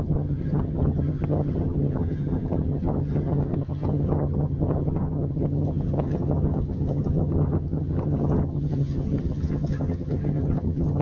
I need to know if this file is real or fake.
fake